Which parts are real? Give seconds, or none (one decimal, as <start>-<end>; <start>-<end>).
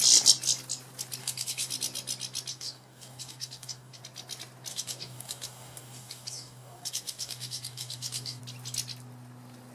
0.0-1.2; 1.7-2.5; 4.0-4.7; 8.4-9.7